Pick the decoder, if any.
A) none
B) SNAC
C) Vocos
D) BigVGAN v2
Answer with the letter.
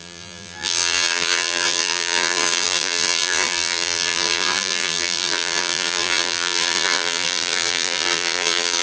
D